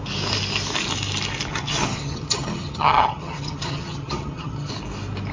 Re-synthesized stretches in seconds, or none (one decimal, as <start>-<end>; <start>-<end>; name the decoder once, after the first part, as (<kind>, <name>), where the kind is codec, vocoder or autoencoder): 1.5-4.7 (vocoder, HiFi-GAN)